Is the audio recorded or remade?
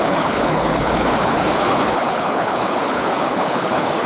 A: remade